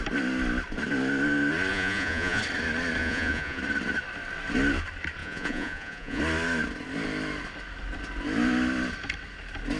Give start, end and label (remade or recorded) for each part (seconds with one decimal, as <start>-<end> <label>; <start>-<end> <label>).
0.0-1.7 recorded; 1.7-2.4 remade; 2.4-3.0 recorded; 3.0-3.6 remade; 3.6-5.2 recorded; 5.2-6.2 remade; 6.2-9.8 recorded